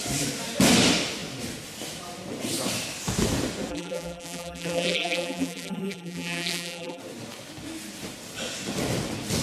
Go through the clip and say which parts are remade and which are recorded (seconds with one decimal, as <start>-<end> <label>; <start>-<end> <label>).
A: 0.0-3.7 recorded; 3.7-7.0 remade; 7.0-9.4 recorded